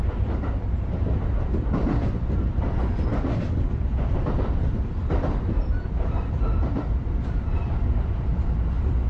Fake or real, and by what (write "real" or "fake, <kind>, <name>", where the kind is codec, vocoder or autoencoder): fake, vocoder, BigVGAN v2